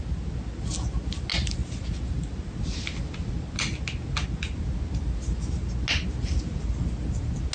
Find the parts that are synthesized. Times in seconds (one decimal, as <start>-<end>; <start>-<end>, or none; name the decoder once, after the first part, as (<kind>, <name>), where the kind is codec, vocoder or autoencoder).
none